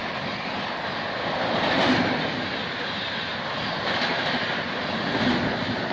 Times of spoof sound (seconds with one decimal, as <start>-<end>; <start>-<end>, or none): none